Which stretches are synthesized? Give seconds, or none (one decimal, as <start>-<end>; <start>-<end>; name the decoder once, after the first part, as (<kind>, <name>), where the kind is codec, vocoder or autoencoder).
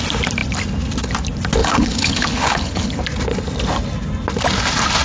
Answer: 1.6-3.0 (codec, HILCodec)